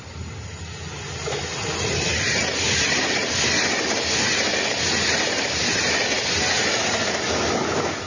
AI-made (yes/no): no